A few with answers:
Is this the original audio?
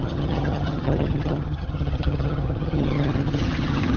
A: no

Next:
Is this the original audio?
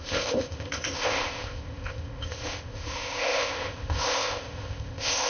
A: no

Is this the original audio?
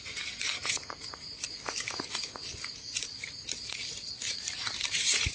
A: no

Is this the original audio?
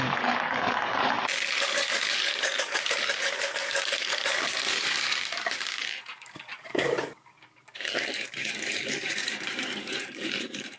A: no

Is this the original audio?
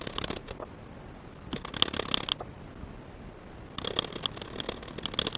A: yes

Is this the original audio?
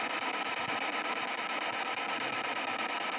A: yes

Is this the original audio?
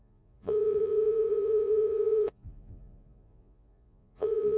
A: no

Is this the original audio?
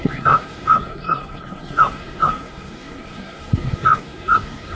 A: no